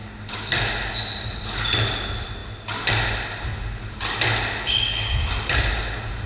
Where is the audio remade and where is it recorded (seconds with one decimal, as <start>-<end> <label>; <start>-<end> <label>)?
0.0-6.3 recorded

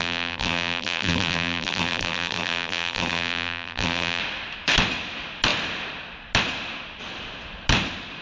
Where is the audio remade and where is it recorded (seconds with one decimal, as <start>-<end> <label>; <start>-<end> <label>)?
0.0-4.2 remade; 4.2-8.2 recorded

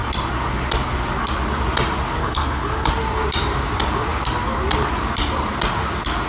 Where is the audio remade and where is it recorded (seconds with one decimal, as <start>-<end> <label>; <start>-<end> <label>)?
0.0-2.2 recorded; 2.2-2.9 remade; 2.9-6.3 recorded

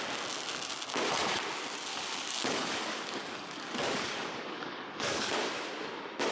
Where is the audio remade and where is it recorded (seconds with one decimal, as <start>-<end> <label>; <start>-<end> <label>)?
0.0-1.9 recorded; 1.9-5.4 remade; 5.4-6.3 recorded

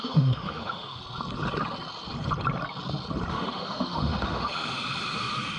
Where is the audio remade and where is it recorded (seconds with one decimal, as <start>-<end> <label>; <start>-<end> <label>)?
0.0-1.0 remade; 1.0-3.3 recorded; 3.3-4.7 remade; 4.7-5.6 recorded